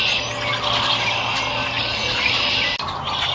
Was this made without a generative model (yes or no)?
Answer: yes